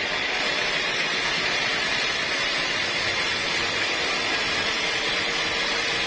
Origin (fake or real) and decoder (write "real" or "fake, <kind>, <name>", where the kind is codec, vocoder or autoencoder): real